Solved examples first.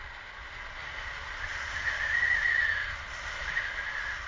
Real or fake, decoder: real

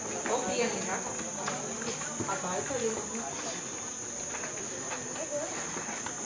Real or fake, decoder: real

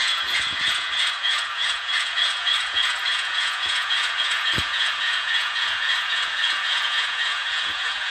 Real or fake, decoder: fake, vocoder, Vocos